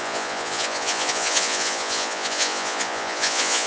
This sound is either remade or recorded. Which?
remade